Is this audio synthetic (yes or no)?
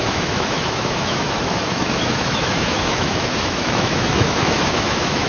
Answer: yes